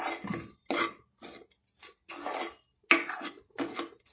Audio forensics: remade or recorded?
recorded